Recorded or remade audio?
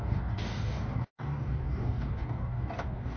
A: remade